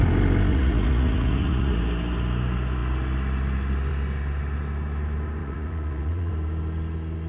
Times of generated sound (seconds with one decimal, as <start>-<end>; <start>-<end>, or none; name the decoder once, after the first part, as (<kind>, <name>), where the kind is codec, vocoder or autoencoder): 0.5-1.8 (vocoder, Vocos); 5.4-6.3